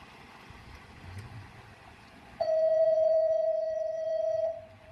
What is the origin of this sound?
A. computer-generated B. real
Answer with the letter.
A